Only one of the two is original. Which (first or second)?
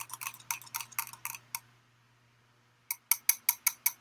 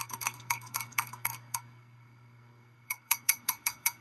first